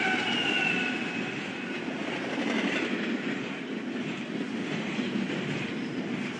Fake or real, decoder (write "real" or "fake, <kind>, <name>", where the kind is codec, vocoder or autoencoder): real